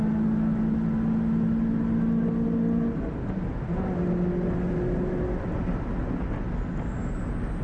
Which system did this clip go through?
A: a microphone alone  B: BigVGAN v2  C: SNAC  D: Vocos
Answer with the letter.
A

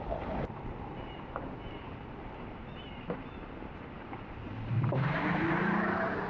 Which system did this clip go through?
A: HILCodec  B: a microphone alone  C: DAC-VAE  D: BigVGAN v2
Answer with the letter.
D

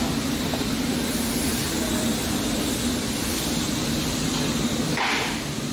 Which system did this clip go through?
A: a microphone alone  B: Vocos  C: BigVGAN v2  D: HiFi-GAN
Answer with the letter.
A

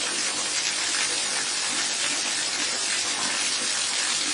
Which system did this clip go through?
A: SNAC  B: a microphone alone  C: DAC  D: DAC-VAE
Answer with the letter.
B